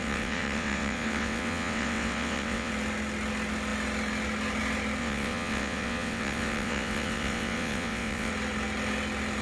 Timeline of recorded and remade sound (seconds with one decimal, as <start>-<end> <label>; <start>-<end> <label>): 0.0-2.7 remade; 2.7-5.0 recorded; 5.0-8.3 remade; 8.3-9.4 recorded